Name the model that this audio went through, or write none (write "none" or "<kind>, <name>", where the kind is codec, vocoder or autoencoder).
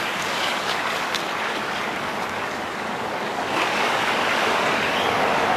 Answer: codec, DAC